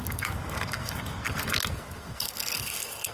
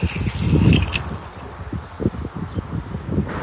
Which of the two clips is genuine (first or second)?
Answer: second